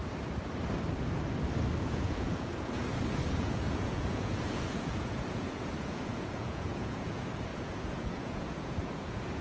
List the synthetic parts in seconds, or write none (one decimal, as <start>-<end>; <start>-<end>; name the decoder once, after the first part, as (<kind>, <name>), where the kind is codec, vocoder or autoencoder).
1.8-2.8 (vocoder, Vocos); 3.4-9.4